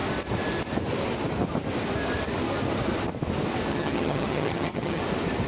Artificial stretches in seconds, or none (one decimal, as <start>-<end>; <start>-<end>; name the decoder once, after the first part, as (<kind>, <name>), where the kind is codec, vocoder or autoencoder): 3.7-5.0 (vocoder, HiFi-GAN)